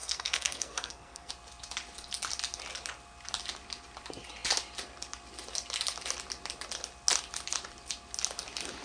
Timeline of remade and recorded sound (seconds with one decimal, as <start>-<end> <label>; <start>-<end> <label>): 0.0-1.3 remade; 1.3-8.8 recorded